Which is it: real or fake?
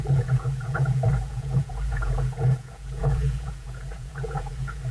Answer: fake